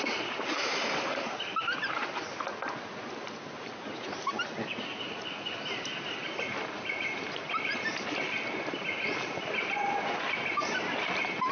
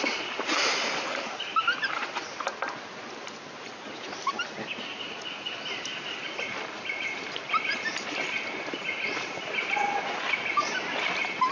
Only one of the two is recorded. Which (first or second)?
first